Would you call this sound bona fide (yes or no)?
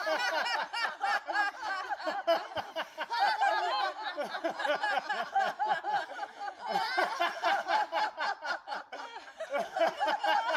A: yes